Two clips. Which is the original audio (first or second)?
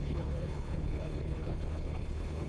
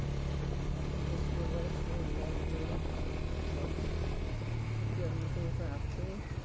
second